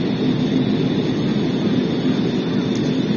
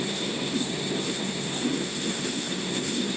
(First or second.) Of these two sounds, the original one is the first